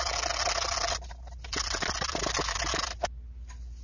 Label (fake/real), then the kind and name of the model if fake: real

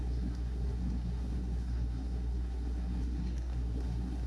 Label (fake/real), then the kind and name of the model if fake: fake, codec, SNAC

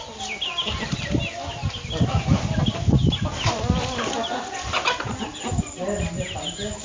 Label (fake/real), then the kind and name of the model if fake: real